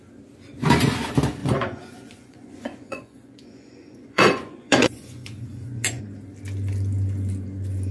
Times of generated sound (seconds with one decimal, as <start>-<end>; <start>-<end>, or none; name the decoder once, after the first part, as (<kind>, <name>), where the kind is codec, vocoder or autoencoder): 1.4-6.0 (vocoder, Vocos)